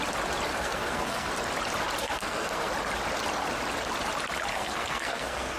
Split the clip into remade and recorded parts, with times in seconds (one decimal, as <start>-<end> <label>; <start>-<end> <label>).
0.0-0.5 recorded; 0.5-1.3 remade; 1.3-2.0 recorded; 2.0-2.7 remade; 2.7-4.5 recorded; 4.5-5.6 remade